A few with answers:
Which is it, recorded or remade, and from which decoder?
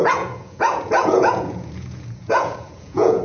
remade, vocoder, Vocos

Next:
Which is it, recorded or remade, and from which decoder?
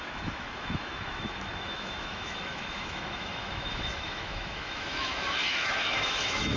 remade, autoencoder, DAC-VAE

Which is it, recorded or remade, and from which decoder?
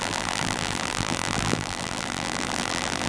remade, vocoder, BigVGAN v2